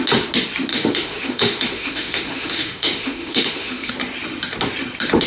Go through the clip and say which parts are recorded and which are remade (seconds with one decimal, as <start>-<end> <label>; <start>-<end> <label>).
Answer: 0.0-0.7 recorded; 0.7-3.9 remade; 3.9-5.3 recorded

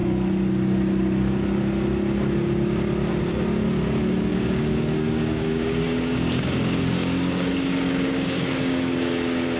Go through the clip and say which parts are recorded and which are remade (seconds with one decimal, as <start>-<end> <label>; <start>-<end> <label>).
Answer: 0.0-4.3 recorded; 4.3-9.0 remade; 9.0-9.6 recorded